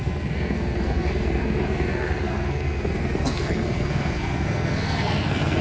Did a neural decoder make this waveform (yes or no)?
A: yes